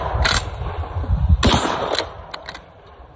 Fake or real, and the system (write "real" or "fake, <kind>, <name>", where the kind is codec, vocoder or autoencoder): real